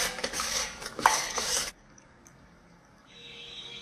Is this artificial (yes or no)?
yes